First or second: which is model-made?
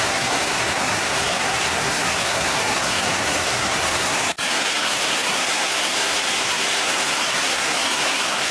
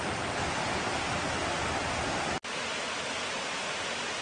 first